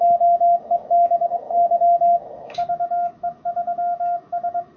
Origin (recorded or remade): remade